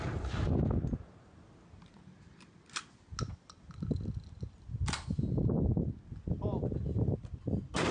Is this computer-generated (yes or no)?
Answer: no